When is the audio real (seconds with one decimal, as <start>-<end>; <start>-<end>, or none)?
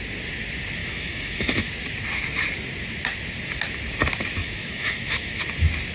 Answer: 0.0-0.8; 1.7-4.4; 5.4-5.9